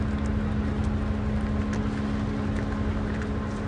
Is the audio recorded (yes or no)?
yes